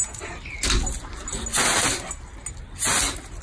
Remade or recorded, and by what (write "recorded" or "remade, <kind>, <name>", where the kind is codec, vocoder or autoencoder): recorded